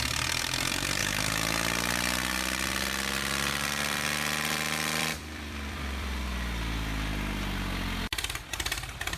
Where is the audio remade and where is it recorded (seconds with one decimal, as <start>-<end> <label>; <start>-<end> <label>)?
0.0-1.0 remade; 1.0-2.2 recorded; 2.2-7.1 remade; 7.1-8.1 recorded; 8.1-9.2 remade